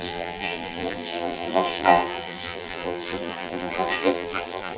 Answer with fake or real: fake